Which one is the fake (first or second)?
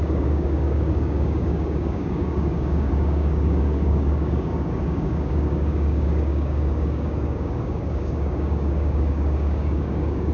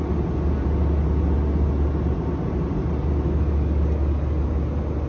first